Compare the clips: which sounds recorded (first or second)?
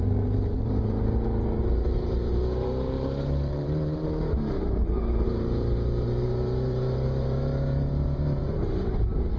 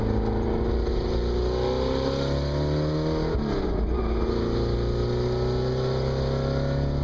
second